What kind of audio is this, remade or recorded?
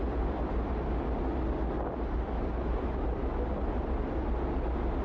recorded